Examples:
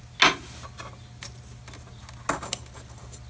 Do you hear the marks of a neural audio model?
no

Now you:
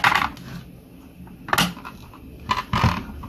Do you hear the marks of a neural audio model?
no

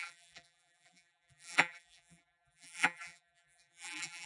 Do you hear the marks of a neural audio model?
yes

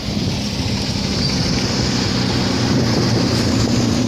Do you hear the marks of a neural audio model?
no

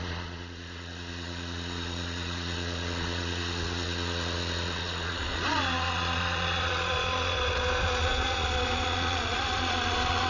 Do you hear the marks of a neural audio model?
yes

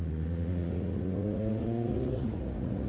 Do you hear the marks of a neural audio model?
yes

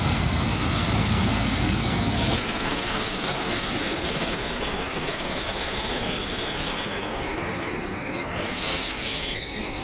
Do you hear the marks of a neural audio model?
yes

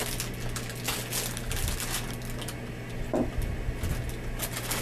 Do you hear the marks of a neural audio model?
no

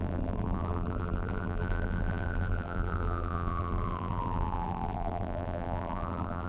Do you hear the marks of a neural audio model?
yes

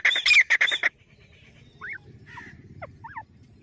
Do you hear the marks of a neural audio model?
no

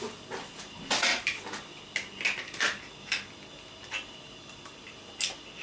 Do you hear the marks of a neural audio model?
no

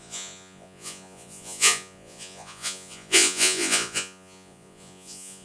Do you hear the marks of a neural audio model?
yes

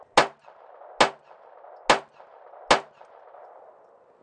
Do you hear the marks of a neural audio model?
no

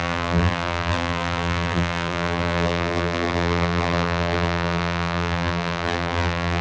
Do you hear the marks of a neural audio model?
yes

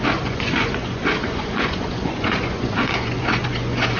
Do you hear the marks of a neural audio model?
yes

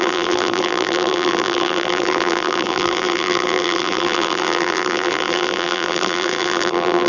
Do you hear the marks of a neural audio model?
yes